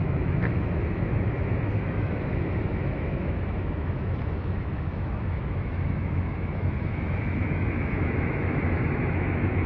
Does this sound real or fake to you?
fake